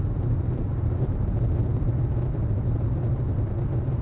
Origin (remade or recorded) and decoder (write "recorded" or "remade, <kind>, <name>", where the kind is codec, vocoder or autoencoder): recorded